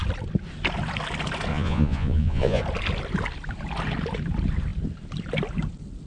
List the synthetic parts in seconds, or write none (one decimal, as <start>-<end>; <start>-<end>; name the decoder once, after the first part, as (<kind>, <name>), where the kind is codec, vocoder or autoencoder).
1.5-2.6 (vocoder, Vocos)